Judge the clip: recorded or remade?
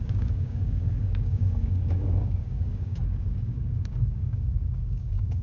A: remade